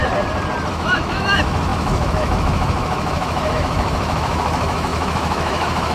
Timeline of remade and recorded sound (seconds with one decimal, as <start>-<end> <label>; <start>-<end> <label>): 0.0-0.7 recorded; 0.7-5.9 remade

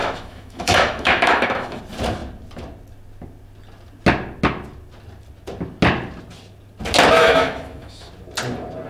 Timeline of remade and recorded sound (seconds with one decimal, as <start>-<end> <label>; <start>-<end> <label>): 0.0-1.8 remade; 1.8-7.2 recorded; 7.2-8.1 remade; 8.1-8.9 recorded

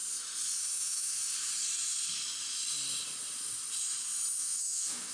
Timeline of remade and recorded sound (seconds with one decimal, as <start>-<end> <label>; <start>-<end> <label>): 0.0-0.6 recorded; 0.6-1.2 remade; 1.2-4.3 recorded; 4.3-5.1 remade